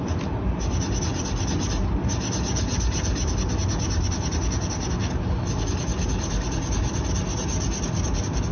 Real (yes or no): yes